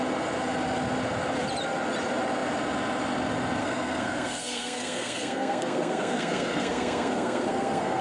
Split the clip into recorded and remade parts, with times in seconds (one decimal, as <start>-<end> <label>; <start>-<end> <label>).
0.0-3.6 recorded; 3.6-8.0 remade